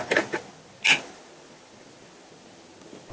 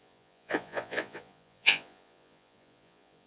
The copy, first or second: second